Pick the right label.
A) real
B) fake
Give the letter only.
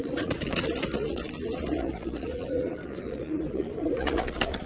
B